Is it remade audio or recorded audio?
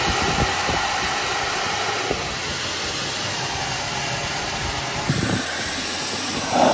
recorded